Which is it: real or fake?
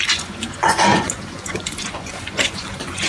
fake